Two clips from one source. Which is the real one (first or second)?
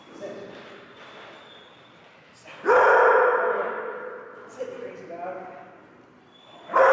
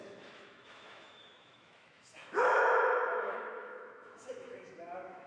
first